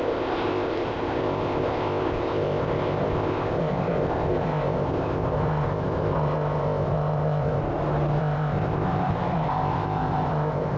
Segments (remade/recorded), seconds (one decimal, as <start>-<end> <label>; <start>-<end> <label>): 0.0-7.6 remade; 7.6-8.2 recorded; 8.2-10.8 remade